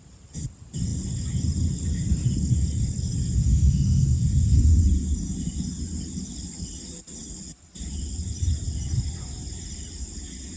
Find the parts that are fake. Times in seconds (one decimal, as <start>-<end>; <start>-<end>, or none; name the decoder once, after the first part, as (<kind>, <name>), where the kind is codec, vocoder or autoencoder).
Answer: 3.4-4.8 (autoencoder, DAC-VAE)